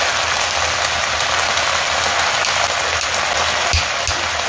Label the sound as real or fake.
real